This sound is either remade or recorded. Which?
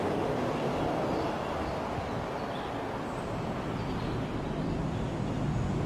recorded